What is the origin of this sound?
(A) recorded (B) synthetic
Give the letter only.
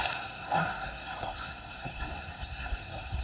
B